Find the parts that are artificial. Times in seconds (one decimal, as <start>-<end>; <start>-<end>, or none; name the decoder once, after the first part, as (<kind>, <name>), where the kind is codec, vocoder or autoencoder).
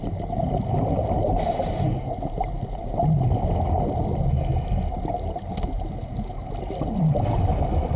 none